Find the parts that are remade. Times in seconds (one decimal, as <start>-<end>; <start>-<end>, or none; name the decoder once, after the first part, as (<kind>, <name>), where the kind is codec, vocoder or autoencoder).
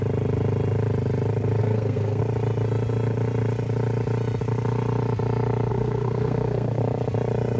1.6-2.2 (codec, SNAC); 5.7-6.8